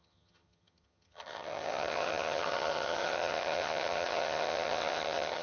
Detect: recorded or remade remade